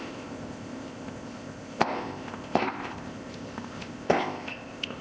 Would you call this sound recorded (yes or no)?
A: no